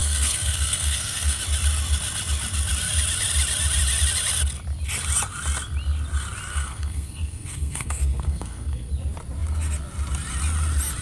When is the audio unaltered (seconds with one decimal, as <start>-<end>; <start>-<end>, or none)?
1.4-6.5; 8.9-11.0